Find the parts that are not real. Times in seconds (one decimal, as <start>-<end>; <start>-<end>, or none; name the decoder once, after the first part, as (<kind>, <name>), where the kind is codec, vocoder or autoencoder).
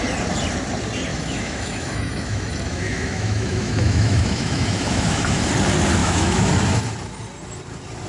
1.1-5.4 (autoencoder, DAC-VAE); 6.0-6.5